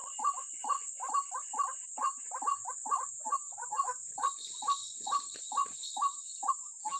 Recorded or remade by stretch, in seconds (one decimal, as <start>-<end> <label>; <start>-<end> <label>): 0.0-3.1 recorded; 3.1-4.0 remade; 4.0-6.5 recorded; 6.5-7.0 remade